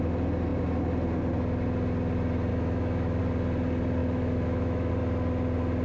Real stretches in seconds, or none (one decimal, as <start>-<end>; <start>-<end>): 0.0-2.5; 3.2-4.0; 4.9-5.8